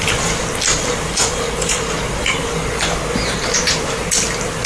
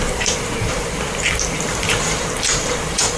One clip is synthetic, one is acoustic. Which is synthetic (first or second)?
second